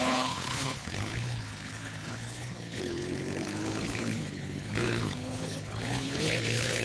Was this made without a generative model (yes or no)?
no